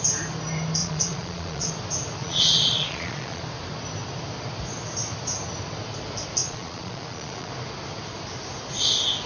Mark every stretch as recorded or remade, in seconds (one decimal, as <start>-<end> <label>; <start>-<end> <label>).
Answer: 0.0-0.8 recorded; 0.8-1.7 remade; 1.7-2.2 recorded; 2.2-3.4 remade; 3.4-6.4 recorded; 6.4-7.5 remade; 7.5-9.3 recorded

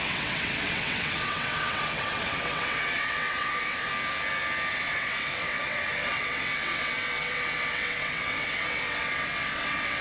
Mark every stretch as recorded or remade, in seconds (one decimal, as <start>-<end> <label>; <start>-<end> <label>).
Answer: 0.0-3.9 remade; 3.9-4.7 recorded; 4.7-10.0 remade

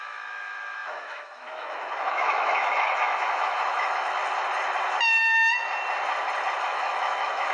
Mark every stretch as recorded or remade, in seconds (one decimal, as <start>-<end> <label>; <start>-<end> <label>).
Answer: 0.0-4.2 remade; 4.2-6.6 recorded; 6.6-7.5 remade

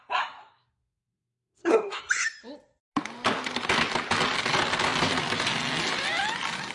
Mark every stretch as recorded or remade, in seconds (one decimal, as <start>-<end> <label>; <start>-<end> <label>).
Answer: 0.0-0.4 recorded; 0.4-2.0 remade; 2.0-6.7 recorded

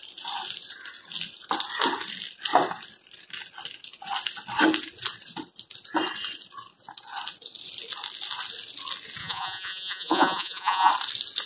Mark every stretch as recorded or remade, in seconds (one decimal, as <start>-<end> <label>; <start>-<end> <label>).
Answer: 0.0-9.2 recorded; 9.2-10.9 remade; 10.9-11.5 recorded

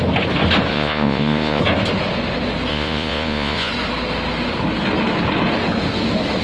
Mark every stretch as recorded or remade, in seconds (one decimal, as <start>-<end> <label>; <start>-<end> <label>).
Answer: 0.0-0.7 recorded; 0.7-1.6 remade; 1.6-2.7 recorded; 2.7-3.7 remade; 3.7-6.4 recorded

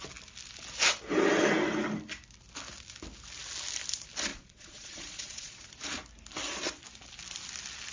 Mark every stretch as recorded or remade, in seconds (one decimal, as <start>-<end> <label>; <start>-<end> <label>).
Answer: 0.0-4.3 recorded; 4.3-5.7 remade; 5.7-7.9 recorded